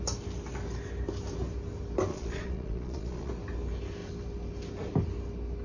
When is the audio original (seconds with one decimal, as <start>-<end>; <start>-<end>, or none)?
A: 0.0-2.1; 3.3-5.6

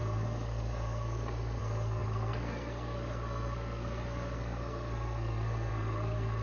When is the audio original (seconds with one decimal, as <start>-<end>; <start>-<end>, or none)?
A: none

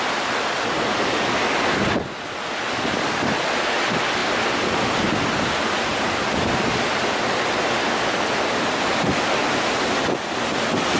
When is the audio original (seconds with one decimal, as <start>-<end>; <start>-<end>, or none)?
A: 0.0-11.0

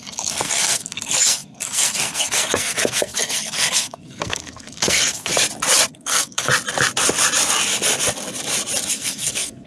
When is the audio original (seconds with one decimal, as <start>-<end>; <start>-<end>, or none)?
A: 5.3-5.9; 6.5-8.9

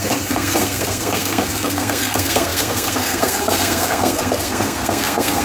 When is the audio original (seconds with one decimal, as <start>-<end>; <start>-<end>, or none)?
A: none